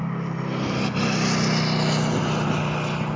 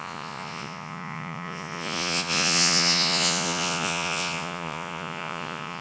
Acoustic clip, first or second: first